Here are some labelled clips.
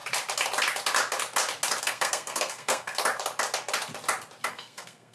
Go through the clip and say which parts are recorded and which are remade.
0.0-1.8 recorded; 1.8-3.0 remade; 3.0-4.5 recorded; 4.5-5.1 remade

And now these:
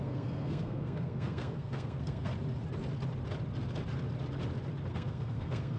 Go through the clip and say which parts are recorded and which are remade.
0.0-2.3 remade; 2.3-4.9 recorded; 4.9-5.8 remade

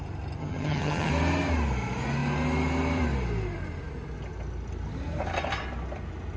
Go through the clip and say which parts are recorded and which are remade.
0.0-0.4 recorded; 0.4-1.1 remade; 1.1-6.4 recorded

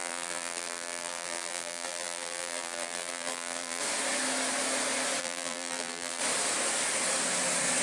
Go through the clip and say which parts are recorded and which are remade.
0.0-3.8 remade; 3.8-5.2 recorded; 5.2-6.2 remade; 6.2-7.8 recorded

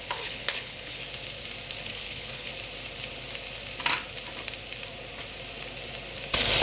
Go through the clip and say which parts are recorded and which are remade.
0.0-1.0 remade; 1.0-1.8 recorded; 1.8-2.5 remade; 2.5-6.6 recorded

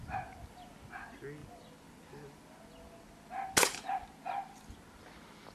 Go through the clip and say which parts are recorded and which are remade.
0.0-5.5 recorded

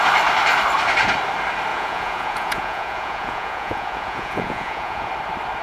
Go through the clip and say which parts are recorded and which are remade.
0.0-1.7 recorded; 1.7-5.1 remade; 5.1-5.6 recorded